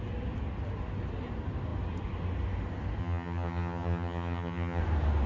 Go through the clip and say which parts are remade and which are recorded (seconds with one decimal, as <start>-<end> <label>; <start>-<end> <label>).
0.0-3.0 recorded; 3.0-4.8 remade; 4.8-5.3 recorded